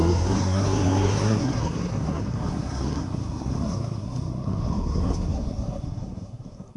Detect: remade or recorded remade